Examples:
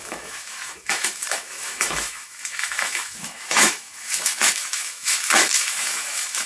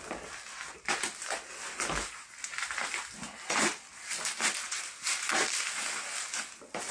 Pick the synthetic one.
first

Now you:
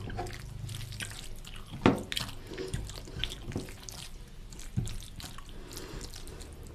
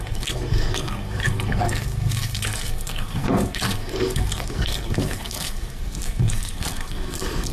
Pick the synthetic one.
second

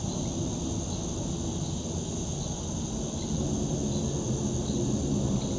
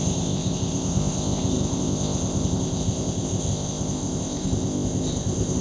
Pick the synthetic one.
second